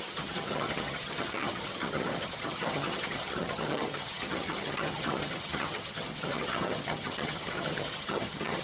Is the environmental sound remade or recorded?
remade